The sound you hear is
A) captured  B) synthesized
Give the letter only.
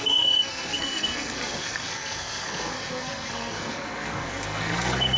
B